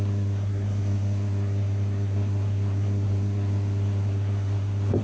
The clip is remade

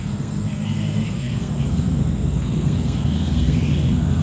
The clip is remade